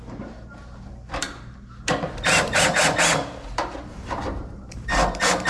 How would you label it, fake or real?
fake